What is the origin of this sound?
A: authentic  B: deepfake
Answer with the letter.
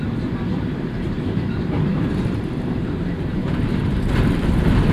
B